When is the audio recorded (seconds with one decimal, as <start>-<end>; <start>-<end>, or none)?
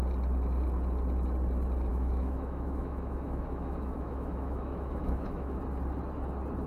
0.0-1.9; 5.6-6.7